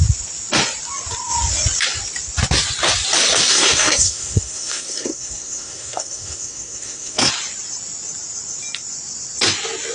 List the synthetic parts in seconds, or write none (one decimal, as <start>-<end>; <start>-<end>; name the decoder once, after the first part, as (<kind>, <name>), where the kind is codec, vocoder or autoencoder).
3.5-7.3 (codec, SNAC)